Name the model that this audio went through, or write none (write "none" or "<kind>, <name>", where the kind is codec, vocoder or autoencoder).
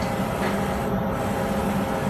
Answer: none